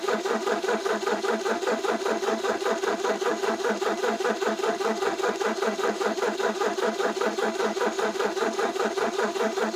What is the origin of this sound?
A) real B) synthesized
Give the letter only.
B